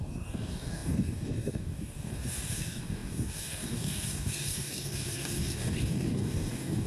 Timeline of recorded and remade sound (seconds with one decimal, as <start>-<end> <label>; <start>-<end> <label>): 0.0-6.9 remade